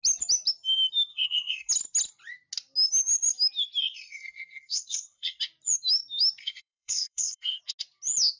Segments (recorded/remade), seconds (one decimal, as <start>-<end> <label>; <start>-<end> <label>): 0.0-1.1 recorded; 1.1-1.7 remade; 1.7-3.8 recorded; 3.8-5.4 remade; 5.4-6.4 recorded; 6.4-7.6 remade; 7.6-8.4 recorded